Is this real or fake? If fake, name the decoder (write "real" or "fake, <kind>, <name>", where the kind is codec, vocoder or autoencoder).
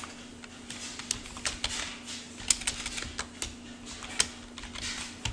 real